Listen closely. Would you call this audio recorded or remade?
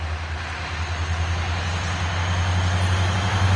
recorded